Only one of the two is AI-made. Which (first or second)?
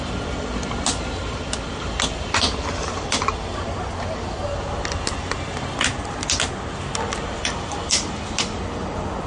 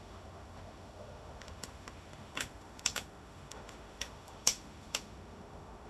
second